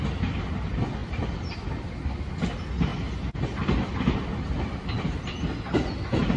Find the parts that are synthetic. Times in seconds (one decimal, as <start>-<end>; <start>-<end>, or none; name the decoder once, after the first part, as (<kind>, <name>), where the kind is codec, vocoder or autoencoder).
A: 1.0-1.6 (vocoder, BigVGAN v2)